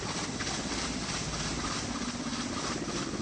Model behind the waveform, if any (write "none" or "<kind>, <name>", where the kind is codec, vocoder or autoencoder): vocoder, BigVGAN v2